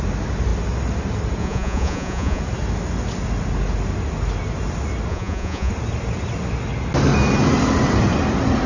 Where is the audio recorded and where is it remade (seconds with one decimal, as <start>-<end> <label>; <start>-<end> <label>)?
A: 0.0-1.4 recorded; 1.4-2.4 remade; 2.4-5.1 recorded; 5.1-5.7 remade; 5.7-8.7 recorded